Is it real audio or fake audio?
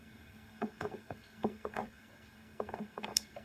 fake